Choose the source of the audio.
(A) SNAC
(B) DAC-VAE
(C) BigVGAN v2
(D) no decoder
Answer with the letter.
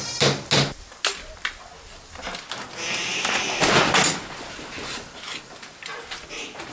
D